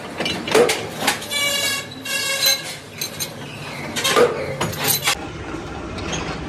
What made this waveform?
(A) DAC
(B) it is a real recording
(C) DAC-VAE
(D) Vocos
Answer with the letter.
B